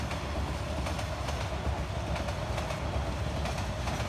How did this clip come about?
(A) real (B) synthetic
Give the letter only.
A